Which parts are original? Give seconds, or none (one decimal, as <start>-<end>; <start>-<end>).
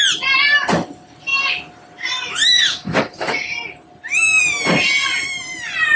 0.0-6.0